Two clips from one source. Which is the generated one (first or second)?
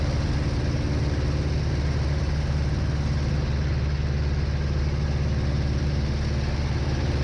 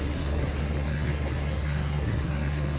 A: second